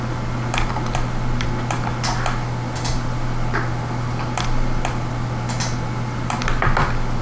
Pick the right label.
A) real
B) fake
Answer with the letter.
A